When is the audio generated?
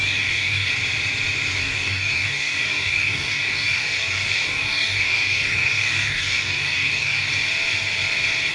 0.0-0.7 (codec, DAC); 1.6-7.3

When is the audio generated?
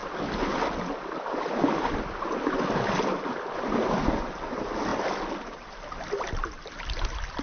none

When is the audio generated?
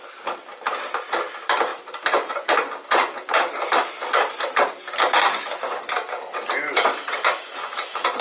0.0-8.2 (vocoder, BigVGAN v2)